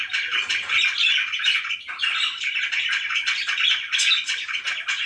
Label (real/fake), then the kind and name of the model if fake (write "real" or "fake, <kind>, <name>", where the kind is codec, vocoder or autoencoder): real